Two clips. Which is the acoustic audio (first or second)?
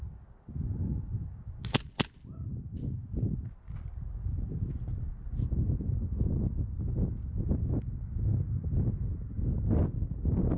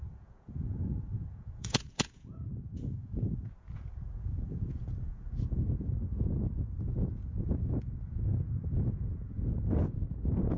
first